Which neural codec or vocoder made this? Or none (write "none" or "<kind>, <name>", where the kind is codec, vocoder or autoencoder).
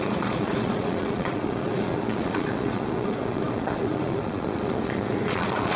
vocoder, Vocos